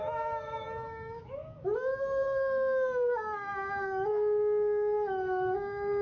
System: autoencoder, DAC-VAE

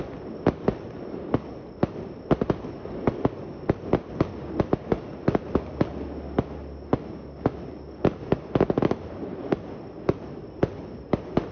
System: none